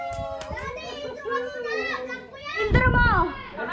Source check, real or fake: real